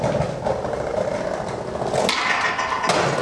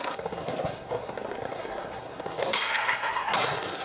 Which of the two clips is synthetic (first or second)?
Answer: second